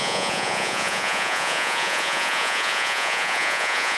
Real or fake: fake